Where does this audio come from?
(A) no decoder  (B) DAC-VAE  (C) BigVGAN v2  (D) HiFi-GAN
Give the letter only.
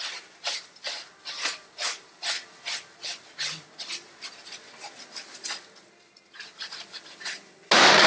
A